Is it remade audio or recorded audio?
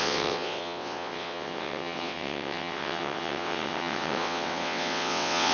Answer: remade